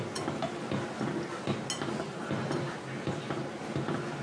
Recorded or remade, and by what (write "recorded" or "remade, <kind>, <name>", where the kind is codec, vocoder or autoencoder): recorded